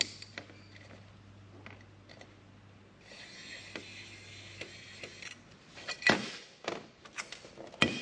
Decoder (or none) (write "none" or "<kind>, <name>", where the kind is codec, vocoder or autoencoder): none